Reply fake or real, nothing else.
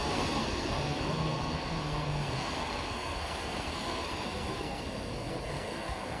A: fake